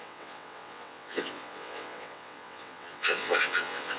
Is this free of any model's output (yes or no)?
no